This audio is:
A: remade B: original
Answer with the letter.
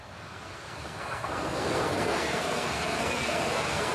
A